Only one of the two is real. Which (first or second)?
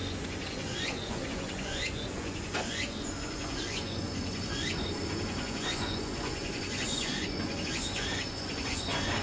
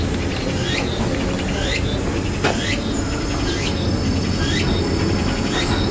second